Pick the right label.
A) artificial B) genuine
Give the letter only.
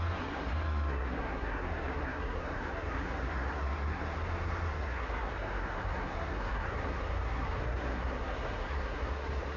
A